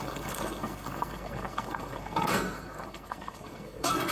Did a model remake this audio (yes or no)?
yes